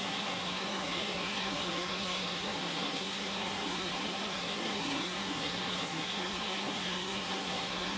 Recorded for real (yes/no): no